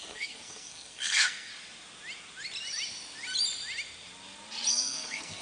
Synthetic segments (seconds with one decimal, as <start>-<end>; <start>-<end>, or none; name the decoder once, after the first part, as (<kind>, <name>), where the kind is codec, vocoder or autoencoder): 0.0-1.5 (codec, SNAC); 4.7-5.4